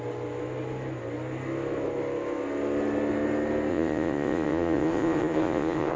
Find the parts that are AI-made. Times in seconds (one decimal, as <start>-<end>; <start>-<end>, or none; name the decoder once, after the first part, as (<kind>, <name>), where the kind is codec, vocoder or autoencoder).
3.7-6.0 (vocoder, Vocos)

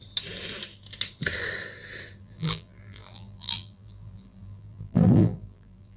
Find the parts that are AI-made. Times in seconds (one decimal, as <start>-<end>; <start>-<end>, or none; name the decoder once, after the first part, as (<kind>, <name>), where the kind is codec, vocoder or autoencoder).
2.2-6.0 (vocoder, BigVGAN v2)

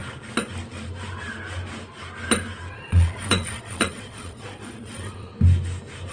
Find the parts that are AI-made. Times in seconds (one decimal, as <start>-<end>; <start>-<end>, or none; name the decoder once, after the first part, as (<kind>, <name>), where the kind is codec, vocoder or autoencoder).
2.7-5.3 (vocoder, Vocos)

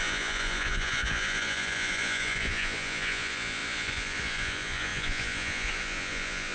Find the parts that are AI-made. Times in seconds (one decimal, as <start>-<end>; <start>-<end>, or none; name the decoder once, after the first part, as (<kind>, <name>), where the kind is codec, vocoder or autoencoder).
0.0-6.5 (vocoder, Vocos)

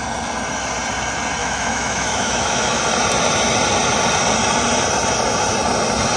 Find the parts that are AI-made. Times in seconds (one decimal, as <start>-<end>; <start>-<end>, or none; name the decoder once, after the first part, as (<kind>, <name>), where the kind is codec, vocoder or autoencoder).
1.4-2.8 (autoencoder, DAC-VAE)

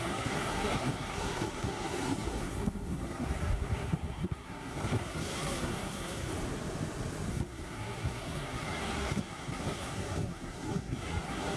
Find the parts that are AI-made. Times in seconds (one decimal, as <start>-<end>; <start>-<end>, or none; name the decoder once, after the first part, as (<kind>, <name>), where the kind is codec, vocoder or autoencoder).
0.0-6.3 (codec, SNAC); 7.3-11.6

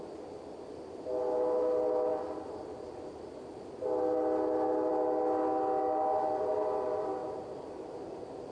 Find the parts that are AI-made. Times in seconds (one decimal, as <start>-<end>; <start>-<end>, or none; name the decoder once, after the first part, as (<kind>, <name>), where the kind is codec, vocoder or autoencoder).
none